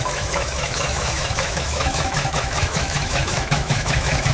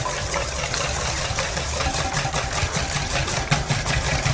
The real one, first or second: second